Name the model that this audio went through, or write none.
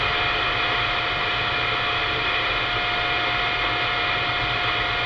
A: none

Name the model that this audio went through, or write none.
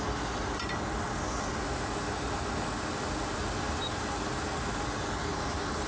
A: none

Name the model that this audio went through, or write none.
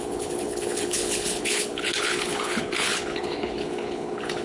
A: codec, HILCodec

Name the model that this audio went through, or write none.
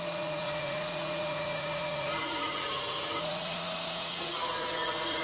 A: vocoder, Vocos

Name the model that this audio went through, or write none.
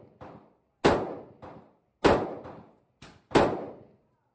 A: none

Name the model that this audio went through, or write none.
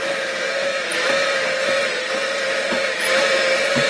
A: vocoder, BigVGAN v2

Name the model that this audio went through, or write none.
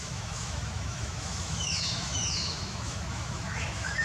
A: autoencoder, DAC-VAE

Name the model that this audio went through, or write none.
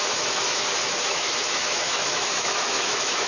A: autoencoder, DAC-VAE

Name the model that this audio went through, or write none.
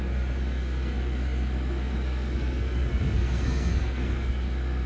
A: codec, SNAC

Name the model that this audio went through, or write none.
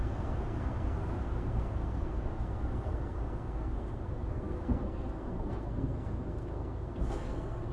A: codec, SNAC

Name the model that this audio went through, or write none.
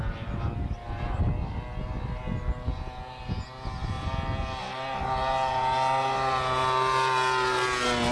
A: none